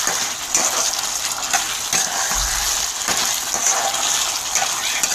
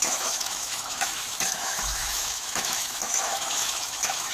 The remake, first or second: second